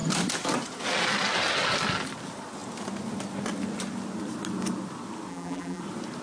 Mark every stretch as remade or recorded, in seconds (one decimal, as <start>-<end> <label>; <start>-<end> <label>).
0.0-5.3 recorded; 5.3-5.8 remade; 5.8-6.2 recorded